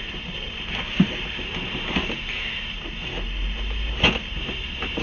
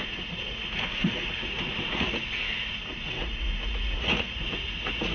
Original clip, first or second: first